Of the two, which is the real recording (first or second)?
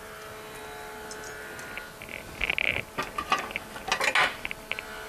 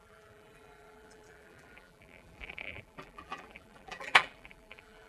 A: first